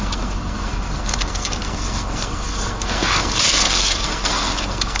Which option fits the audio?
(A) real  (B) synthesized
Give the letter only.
B